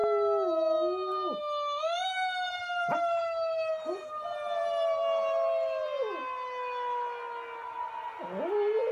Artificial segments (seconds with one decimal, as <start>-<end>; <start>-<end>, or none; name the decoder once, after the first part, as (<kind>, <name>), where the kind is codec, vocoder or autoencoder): none